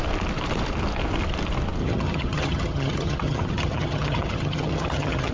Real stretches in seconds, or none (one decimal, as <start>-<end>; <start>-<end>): 0.0-1.8